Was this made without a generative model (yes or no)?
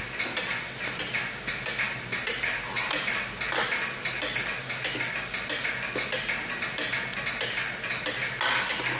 yes